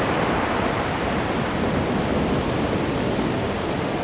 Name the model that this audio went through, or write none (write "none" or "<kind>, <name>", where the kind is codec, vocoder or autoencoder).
none